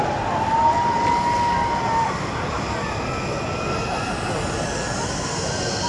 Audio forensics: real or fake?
real